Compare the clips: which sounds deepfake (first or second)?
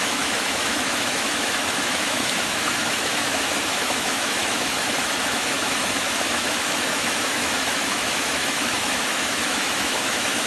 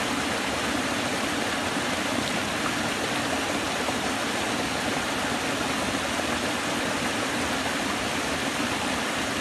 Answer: first